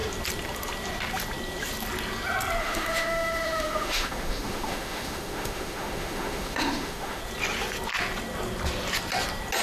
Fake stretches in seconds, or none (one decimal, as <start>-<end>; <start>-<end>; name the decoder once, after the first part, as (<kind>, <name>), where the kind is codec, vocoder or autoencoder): 2.6-7.2 (autoencoder, DAC-VAE)